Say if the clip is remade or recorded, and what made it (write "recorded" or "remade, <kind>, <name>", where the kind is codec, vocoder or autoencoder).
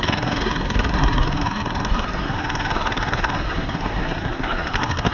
remade, codec, SNAC